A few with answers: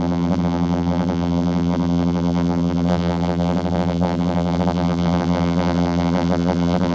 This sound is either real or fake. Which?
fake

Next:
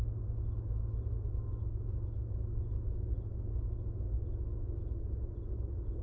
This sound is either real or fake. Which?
real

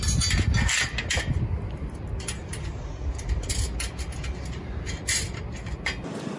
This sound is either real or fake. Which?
real